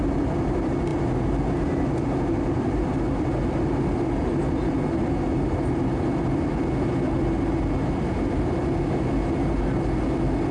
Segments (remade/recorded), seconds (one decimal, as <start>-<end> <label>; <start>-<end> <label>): 0.0-10.5 recorded